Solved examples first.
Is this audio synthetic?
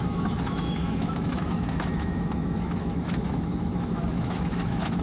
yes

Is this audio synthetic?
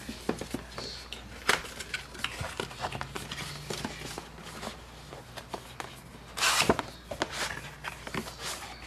no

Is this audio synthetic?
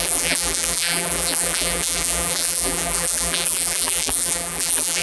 yes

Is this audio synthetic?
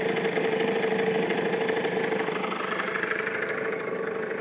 yes